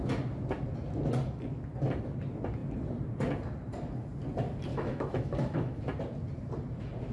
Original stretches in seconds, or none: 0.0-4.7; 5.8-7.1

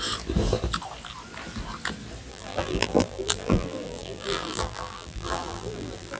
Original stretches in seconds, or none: 0.0-2.3

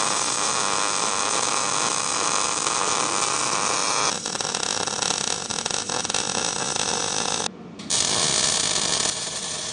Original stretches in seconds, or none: 0.0-9.7

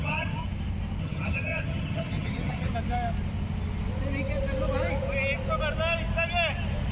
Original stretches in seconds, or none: 0.4-1.0; 2.7-6.9

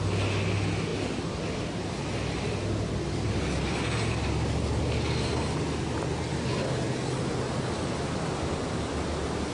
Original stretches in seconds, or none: 0.0-9.5

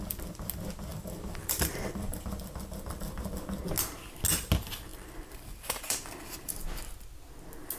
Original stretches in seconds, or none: 0.0-0.9; 3.6-4.9; 6.5-7.8